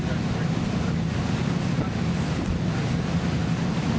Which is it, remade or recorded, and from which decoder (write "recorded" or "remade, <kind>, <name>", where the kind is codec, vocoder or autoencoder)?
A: recorded